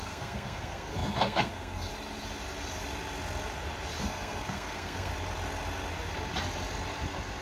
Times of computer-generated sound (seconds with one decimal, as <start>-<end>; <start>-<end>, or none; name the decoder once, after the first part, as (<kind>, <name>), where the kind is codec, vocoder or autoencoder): 0.0-1.9 (codec, SNAC); 4.0-5.1